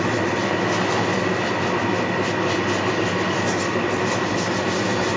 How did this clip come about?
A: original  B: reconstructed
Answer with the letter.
A